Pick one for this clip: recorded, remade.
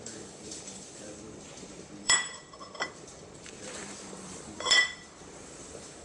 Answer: remade